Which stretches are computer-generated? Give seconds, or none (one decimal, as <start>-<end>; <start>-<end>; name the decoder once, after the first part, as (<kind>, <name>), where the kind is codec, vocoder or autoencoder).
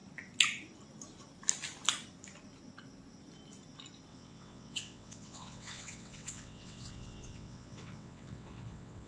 4.1-9.1 (vocoder, WaveNeXt)